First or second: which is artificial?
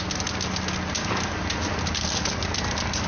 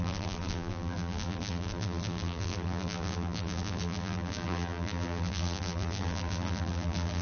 second